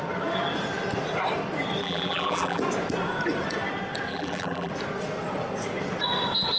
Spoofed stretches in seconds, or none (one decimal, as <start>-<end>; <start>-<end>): 1.8-2.6; 4.1-4.7